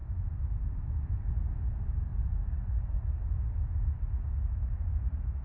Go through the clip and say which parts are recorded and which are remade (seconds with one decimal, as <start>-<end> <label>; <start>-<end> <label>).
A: 0.0-0.8 remade; 0.8-2.1 recorded; 2.1-4.0 remade; 4.0-5.4 recorded